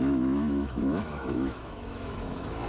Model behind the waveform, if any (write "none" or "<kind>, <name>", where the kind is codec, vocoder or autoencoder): autoencoder, DAC-VAE